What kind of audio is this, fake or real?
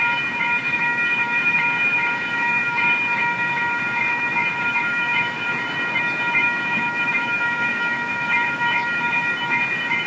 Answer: fake